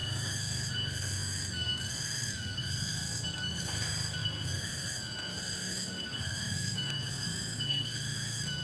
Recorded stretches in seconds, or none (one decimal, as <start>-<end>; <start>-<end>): none